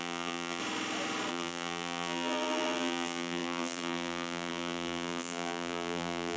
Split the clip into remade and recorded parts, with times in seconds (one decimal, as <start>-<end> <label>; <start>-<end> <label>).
0.0-0.6 remade; 0.6-1.3 recorded; 1.3-6.4 remade